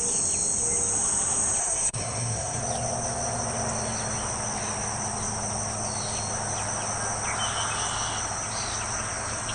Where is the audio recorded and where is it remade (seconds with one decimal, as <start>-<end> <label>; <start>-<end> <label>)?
0.0-1.6 recorded; 1.6-2.6 remade; 2.6-9.5 recorded